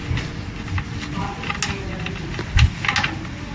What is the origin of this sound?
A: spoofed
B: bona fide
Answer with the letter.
B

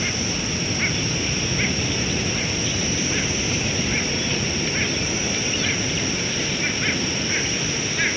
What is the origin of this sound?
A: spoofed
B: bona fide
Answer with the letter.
B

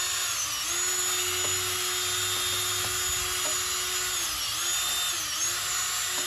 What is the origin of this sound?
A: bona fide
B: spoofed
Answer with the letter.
A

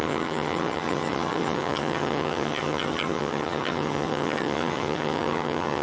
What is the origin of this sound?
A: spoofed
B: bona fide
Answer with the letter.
A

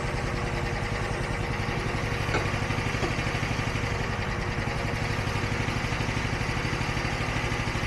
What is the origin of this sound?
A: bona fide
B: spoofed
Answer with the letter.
A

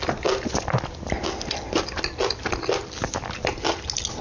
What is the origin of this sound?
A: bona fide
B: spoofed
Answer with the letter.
A